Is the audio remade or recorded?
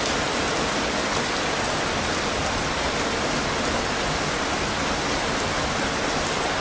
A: recorded